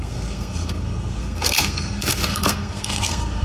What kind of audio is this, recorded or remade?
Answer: remade